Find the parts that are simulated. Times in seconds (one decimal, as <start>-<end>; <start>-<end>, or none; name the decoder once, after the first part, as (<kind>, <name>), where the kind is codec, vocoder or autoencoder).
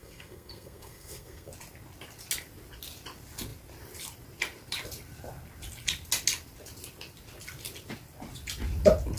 0.0-1.5 (codec, SNAC)